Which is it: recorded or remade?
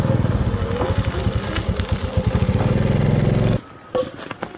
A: recorded